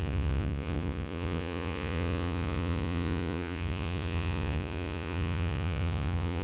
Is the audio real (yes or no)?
no